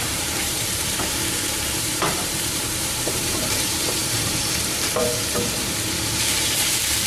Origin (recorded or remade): remade